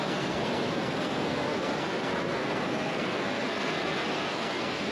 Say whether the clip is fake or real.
fake